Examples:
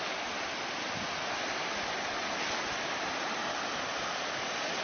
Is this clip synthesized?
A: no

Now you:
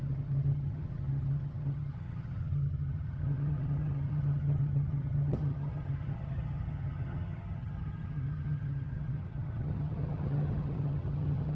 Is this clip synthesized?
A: yes